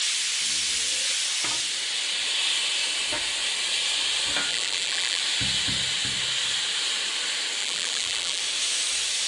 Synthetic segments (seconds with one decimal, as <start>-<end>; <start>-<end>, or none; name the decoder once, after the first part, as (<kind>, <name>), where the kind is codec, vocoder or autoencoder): 4.5-5.2 (vocoder, BigVGAN v2); 7.6-8.4